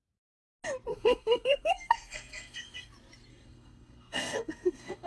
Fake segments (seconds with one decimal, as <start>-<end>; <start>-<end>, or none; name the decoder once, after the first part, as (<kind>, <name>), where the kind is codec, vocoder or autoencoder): 0.9-2.9 (codec, SNAC); 3.3-5.1